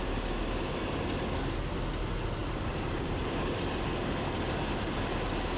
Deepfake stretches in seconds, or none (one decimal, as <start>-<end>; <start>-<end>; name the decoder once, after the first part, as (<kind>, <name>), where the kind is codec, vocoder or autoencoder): 2.4-3.6 (vocoder, BigVGAN v2)